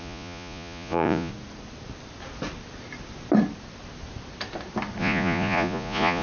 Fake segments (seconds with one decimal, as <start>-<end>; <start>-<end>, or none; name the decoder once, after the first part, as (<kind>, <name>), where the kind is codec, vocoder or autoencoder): 0.0-1.3 (vocoder, Vocos); 5.0-6.2